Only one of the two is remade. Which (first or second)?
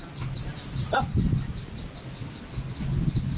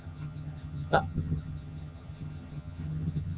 second